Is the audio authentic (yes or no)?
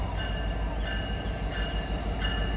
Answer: yes